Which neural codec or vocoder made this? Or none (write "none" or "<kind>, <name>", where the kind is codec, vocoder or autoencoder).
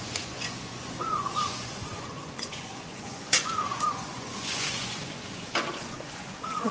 vocoder, Vocos